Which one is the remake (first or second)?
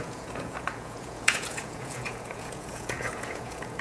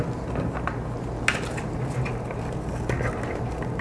first